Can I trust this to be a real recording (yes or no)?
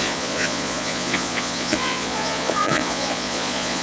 no